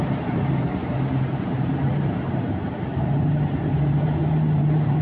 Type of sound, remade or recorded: remade